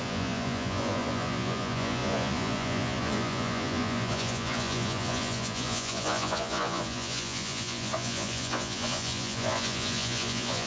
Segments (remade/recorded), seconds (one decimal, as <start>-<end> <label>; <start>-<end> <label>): 0.0-10.7 remade